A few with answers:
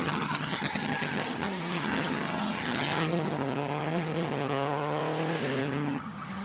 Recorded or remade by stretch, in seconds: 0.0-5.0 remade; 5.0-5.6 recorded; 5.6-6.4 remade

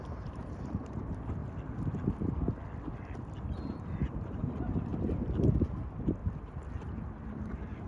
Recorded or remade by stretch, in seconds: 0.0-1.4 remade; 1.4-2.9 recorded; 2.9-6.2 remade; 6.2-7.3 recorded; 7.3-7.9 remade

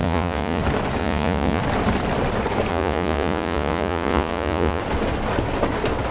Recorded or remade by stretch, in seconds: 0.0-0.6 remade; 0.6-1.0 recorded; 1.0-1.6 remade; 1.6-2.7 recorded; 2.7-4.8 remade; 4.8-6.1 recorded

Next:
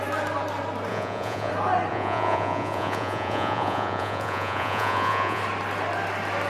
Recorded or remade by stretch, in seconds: 0.0-0.9 recorded; 0.9-1.5 remade; 1.5-1.9 recorded; 1.9-5.4 remade; 5.4-6.5 recorded

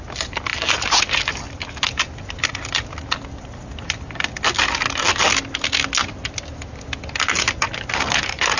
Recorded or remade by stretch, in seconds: 0.0-8.6 recorded

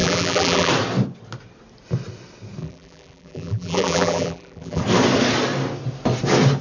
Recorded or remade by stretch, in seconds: 0.0-0.7 remade; 0.7-2.6 recorded; 2.6-4.8 remade; 4.8-6.6 recorded